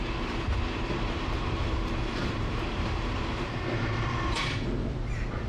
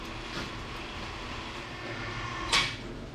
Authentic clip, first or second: second